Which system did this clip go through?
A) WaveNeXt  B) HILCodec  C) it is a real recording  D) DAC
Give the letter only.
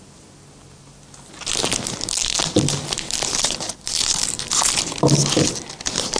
C